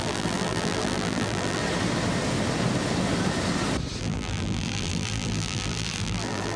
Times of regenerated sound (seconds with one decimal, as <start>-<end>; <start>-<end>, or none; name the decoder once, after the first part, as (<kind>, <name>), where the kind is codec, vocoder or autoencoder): 0.0-1.6 (vocoder, BigVGAN v2); 4.0-6.6